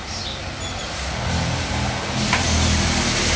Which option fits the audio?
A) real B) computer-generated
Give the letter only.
A